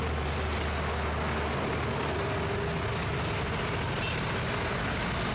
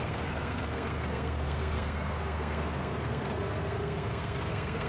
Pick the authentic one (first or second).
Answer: first